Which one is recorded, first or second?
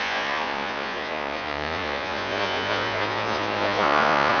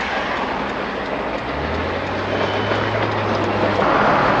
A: second